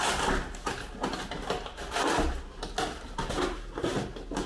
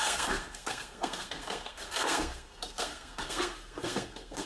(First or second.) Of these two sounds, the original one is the first